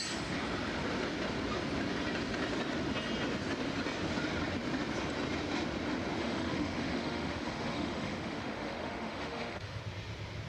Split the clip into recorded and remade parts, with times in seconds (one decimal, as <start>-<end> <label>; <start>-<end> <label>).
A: 0.0-6.2 recorded; 6.2-9.8 remade; 9.8-10.5 recorded